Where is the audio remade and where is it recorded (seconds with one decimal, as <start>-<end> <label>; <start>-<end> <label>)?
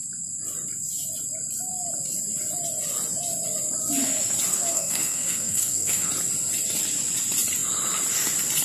0.0-4.5 recorded; 4.5-6.1 remade; 6.1-8.6 recorded